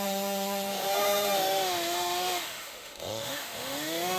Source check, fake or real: fake